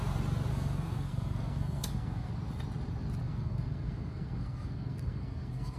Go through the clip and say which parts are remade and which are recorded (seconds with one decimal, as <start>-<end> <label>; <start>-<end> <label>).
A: 0.0-0.5 recorded; 0.5-2.3 remade; 2.3-3.2 recorded; 3.2-5.8 remade